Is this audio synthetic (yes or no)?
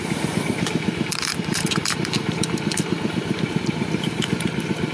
yes